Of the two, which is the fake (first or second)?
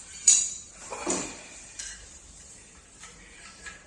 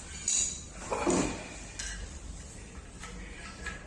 first